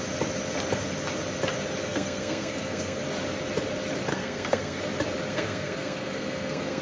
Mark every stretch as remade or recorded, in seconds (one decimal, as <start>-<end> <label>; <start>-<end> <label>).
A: 0.0-1.8 recorded; 1.8-3.0 remade; 3.0-4.1 recorded; 4.1-4.8 remade; 4.8-5.3 recorded; 5.3-6.8 remade